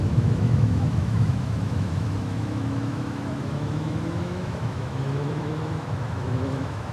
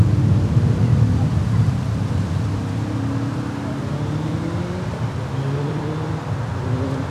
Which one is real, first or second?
second